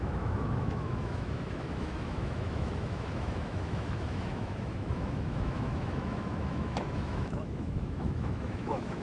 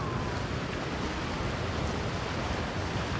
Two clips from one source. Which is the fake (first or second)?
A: first